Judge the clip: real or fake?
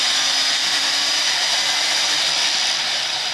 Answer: real